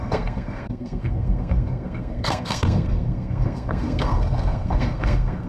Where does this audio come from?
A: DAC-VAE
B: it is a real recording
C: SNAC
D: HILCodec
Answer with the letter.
C